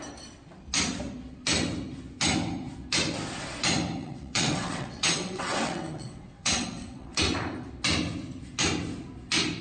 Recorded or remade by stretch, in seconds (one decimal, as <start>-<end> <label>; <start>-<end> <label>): 0.0-4.0 recorded; 4.0-7.2 remade; 7.2-9.6 recorded